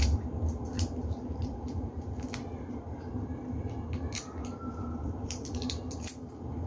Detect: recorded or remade remade